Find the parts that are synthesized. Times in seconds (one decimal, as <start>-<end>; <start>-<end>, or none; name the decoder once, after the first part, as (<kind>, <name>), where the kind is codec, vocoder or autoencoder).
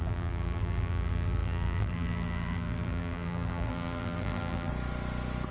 0.0-4.7 (vocoder, BigVGAN v2)